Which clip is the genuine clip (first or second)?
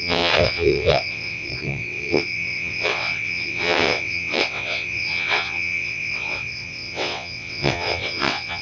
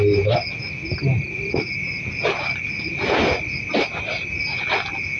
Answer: second